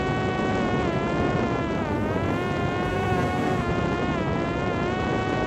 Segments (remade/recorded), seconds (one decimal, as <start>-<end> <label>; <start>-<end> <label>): 0.0-2.9 recorded; 2.9-3.7 remade; 3.7-5.5 recorded